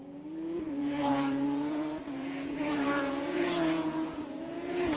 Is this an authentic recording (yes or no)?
no